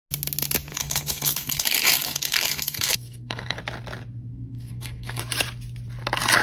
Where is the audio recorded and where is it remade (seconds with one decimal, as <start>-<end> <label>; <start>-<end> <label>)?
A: 0.0-0.7 recorded; 0.7-3.6 remade; 3.6-4.3 recorded; 4.3-5.2 remade; 5.2-6.4 recorded